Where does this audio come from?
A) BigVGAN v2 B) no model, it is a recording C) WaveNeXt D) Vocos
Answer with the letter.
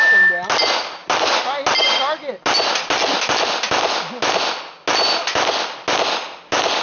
B